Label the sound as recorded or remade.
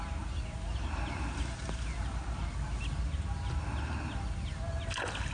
recorded